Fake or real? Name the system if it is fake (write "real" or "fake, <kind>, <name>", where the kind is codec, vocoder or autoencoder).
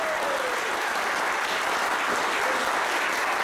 real